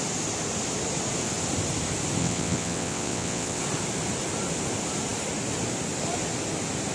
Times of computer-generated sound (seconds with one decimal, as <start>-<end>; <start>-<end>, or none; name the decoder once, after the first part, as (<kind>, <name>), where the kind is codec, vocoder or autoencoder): 2.2-3.6 (vocoder, WaveNeXt)